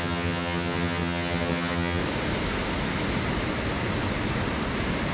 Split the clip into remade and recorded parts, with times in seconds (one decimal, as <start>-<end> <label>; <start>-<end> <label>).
0.0-2.0 remade; 2.0-5.1 recorded